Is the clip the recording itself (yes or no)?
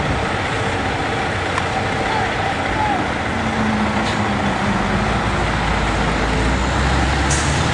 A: yes